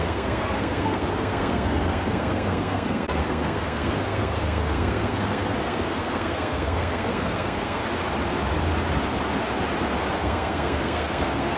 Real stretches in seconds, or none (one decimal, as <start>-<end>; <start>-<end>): 7.8-10.1